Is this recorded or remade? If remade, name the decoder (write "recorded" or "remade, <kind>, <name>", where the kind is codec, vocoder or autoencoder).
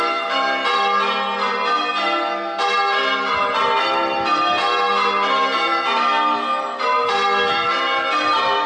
recorded